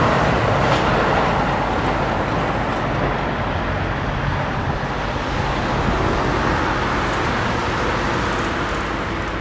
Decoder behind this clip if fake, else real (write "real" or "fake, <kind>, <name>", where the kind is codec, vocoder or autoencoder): real